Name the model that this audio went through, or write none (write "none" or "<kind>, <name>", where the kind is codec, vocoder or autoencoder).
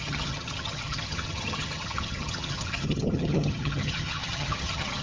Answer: vocoder, HiFi-GAN